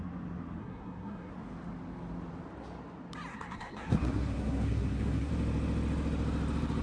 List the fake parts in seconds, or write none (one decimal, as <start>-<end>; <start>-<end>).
0.6-1.3; 3.3-5.3